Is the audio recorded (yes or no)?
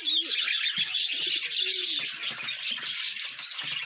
yes